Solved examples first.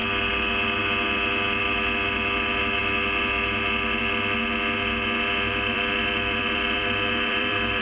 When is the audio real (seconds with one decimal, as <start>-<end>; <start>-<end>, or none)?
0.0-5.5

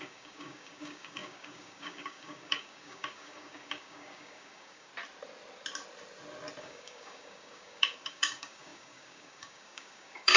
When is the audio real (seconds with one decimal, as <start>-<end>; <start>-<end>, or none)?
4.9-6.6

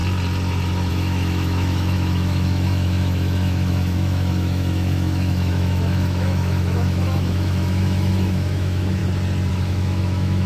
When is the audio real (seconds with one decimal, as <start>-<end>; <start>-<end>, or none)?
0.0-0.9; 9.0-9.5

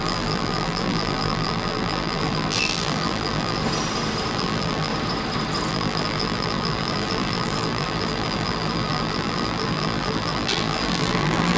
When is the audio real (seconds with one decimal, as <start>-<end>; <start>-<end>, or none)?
3.6-4.3; 4.9-5.7